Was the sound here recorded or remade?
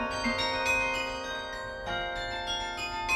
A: recorded